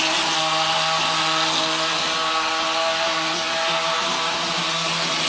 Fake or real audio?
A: real